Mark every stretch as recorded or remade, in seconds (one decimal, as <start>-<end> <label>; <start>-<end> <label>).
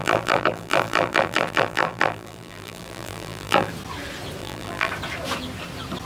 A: 0.0-3.7 remade; 3.7-4.4 recorded; 4.4-4.9 remade; 4.9-6.1 recorded